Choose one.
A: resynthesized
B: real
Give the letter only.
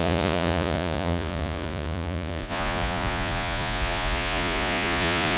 A